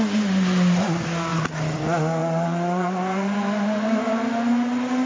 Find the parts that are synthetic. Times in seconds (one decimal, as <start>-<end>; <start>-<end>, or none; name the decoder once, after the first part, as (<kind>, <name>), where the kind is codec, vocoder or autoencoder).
1.3-1.8 (vocoder, BigVGAN v2)